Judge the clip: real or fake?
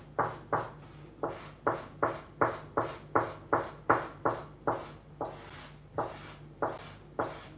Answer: real